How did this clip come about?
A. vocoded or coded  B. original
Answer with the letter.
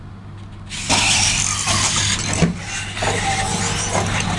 B